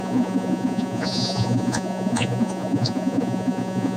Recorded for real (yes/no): no